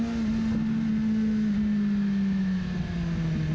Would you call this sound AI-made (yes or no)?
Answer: no